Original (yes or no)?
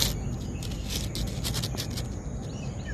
yes